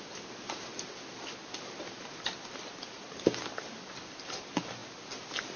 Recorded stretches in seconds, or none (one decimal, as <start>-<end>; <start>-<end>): 0.0-5.6